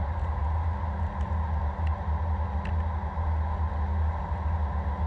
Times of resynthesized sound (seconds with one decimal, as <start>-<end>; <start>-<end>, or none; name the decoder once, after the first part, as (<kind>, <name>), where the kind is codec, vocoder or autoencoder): none